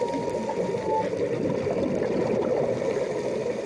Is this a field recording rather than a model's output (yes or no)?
yes